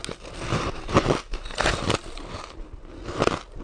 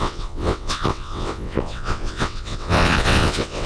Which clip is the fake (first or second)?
second